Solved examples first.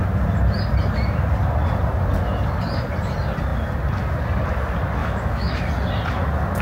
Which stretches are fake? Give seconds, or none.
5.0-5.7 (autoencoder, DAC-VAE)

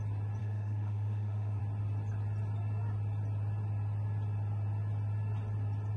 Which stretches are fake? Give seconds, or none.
0.4-1.6 (autoencoder, DAC-VAE)

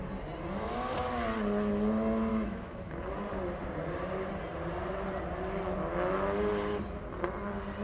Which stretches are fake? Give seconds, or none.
2.3-2.9 (autoencoder, DAC-VAE)

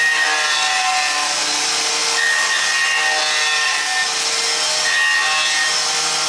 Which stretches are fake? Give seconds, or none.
none

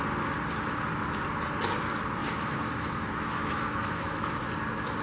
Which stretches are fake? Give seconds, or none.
2.2-4.4 (autoencoder, DAC-VAE)